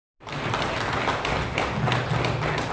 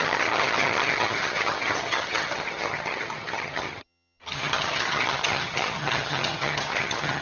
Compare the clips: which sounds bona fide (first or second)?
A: first